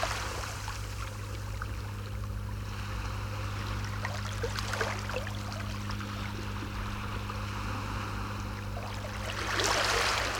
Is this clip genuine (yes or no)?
yes